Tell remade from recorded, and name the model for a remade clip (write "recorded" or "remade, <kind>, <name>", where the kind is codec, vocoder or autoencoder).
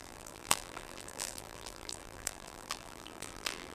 remade, vocoder, BigVGAN v2